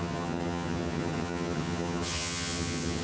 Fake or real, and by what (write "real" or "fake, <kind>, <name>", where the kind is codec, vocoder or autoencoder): fake, vocoder, HiFi-GAN